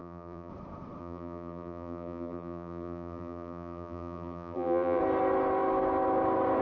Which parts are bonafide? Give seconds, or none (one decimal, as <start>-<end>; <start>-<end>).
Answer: 0.5-1.0; 5.0-6.6